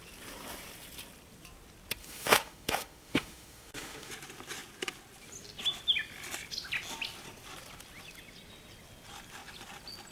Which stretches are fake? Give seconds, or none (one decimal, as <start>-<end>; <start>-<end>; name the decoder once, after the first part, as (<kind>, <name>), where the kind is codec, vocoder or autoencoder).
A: 2.0-4.1 (autoencoder, DAC-VAE)